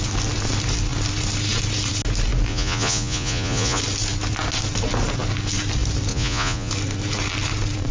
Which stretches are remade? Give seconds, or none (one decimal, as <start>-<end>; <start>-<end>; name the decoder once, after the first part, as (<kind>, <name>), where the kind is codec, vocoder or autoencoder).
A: 2.5-3.8 (vocoder, Vocos); 6.1-6.7